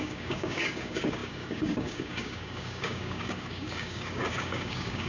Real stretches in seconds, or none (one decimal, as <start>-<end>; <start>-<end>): none